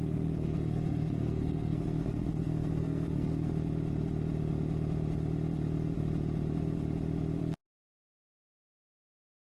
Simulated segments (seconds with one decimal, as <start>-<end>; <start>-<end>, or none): 0.0-3.5; 7.4-9.6